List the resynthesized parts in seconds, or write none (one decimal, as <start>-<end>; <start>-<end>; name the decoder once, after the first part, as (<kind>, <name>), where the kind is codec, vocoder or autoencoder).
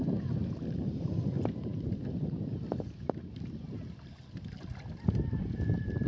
none